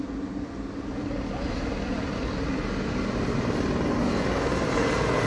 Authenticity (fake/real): real